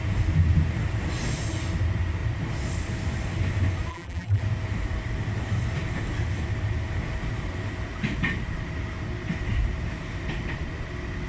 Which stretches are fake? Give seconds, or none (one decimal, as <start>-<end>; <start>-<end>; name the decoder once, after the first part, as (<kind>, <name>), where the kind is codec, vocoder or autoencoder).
3.9-4.4 (vocoder, BigVGAN v2)